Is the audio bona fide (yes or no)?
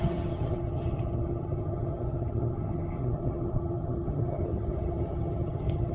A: no